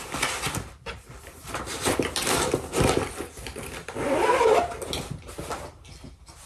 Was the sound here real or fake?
real